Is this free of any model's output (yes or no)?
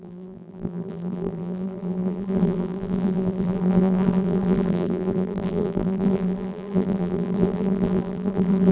no